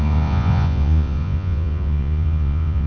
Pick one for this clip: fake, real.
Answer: fake